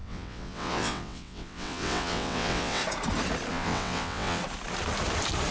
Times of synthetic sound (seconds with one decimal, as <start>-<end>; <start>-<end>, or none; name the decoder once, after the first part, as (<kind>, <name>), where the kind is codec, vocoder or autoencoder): 0.0-2.8 (vocoder, WaveNeXt); 3.5-4.4